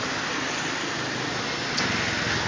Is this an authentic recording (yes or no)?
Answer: yes